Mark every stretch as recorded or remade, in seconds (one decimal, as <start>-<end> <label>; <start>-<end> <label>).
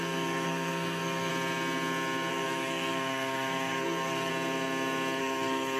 0.0-1.3 remade; 1.3-2.3 recorded; 2.3-4.3 remade; 4.3-5.2 recorded; 5.2-5.8 remade